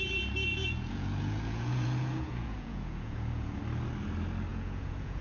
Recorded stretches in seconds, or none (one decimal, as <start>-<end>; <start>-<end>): 0.0-0.5; 3.6-4.5